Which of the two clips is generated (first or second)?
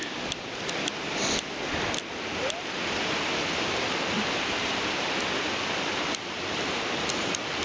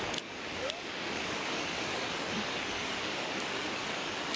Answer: second